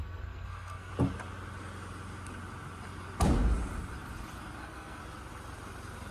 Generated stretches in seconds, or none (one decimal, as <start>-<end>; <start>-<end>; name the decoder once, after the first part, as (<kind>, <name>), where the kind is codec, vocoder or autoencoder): 0.0-0.9 (codec, SNAC); 4.6-5.0